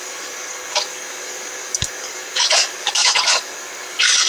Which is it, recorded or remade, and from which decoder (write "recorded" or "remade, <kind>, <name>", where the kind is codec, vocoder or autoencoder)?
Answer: remade, codec, DAC